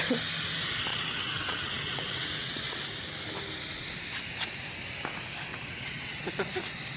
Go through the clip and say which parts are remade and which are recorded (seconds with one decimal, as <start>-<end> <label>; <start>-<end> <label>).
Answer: 0.0-0.9 recorded; 0.9-2.8 remade; 2.8-5.5 recorded; 5.5-6.3 remade; 6.3-7.0 recorded